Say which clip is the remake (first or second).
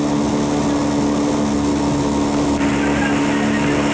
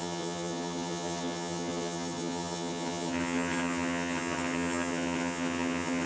second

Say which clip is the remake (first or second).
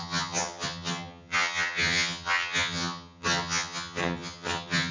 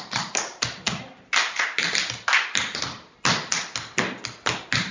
first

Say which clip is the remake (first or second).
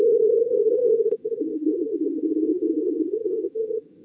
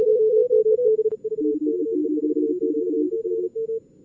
first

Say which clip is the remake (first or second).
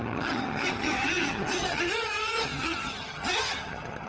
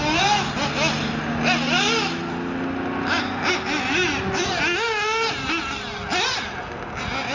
first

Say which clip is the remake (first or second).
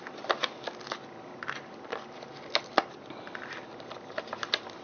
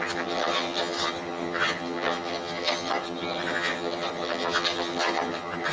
second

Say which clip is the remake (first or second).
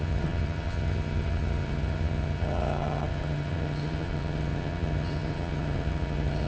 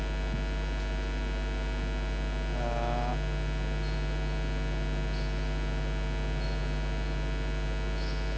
first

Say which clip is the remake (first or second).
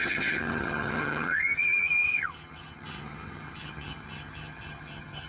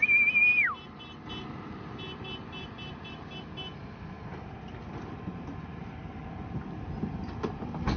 first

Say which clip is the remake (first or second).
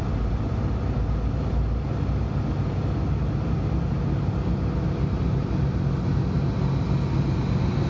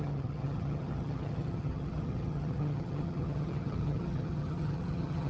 second